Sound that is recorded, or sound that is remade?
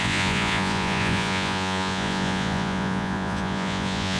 remade